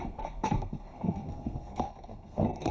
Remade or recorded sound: remade